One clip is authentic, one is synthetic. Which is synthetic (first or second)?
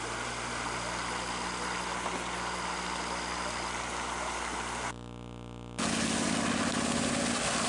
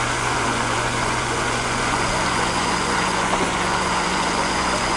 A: second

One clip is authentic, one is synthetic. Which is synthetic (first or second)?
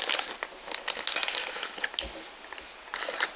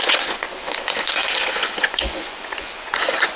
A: second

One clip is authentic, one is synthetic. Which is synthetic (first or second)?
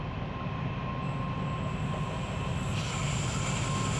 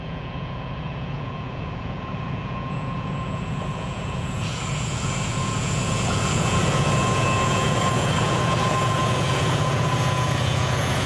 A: second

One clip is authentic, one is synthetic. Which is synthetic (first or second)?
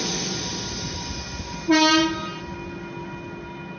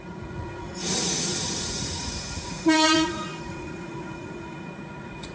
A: second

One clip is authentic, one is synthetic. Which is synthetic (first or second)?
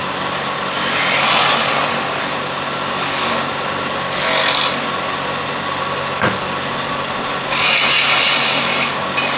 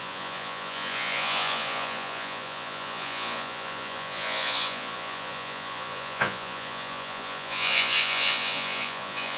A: second